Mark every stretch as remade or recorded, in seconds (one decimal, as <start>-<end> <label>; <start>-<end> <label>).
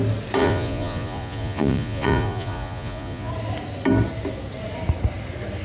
0.0-0.4 recorded; 0.4-3.3 remade; 3.3-5.6 recorded